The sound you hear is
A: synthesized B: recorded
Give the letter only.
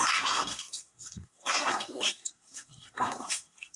A